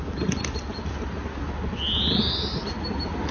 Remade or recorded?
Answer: recorded